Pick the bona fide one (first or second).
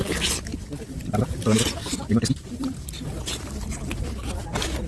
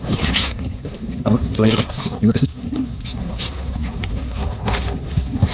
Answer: first